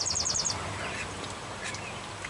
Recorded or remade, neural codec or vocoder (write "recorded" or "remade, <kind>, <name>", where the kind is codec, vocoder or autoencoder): recorded